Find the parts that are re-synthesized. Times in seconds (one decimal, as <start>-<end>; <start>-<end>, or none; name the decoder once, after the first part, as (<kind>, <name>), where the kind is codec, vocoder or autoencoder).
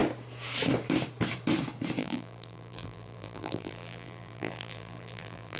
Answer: 2.0-5.6 (vocoder, BigVGAN v2)